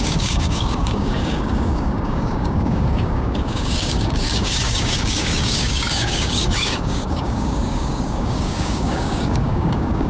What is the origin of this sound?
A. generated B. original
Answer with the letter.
A